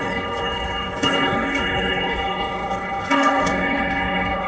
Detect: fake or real fake